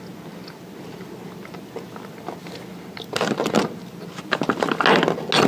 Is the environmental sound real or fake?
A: real